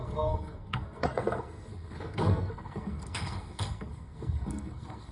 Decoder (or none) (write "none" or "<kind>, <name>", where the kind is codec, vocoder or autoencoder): codec, SNAC